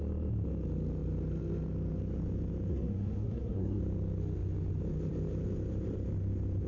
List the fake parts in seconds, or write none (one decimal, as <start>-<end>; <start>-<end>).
2.7-3.8